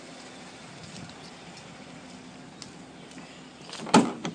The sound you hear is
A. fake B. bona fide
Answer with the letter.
B